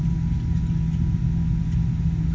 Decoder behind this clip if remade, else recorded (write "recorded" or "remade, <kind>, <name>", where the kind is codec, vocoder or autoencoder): recorded